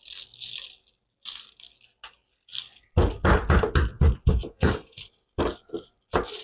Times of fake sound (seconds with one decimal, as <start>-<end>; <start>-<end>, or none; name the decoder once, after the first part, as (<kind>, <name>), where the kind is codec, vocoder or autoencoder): 4.5-5.0 (codec, SNAC)